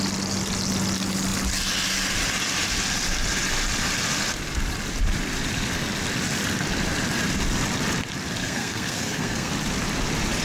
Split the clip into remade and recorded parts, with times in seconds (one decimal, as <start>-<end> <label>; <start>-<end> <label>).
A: 0.0-8.4 recorded; 8.4-9.5 remade; 9.5-10.4 recorded